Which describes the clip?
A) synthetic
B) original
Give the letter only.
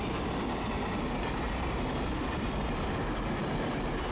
B